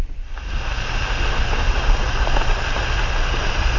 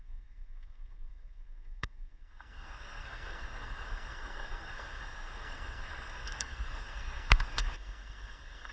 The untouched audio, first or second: first